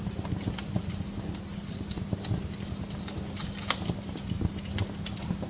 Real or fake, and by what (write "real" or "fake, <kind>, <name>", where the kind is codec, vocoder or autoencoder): real